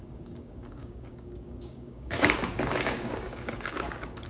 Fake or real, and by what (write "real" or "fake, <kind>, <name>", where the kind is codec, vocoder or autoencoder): fake, codec, DAC